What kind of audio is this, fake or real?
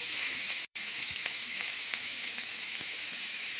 fake